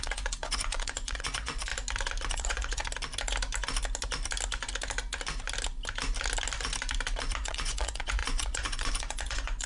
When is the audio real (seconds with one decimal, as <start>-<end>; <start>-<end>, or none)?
1.7-2.3; 2.8-7.4